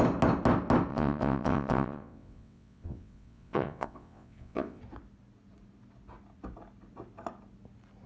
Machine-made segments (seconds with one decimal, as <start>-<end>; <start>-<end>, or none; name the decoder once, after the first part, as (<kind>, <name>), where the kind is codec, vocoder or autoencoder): 0.9-4.8 (vocoder, WaveNeXt)